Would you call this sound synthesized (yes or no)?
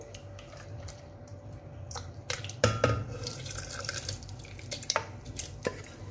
yes